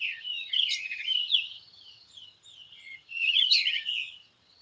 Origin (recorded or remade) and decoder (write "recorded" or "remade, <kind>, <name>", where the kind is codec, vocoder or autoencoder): remade, vocoder, HiFi-GAN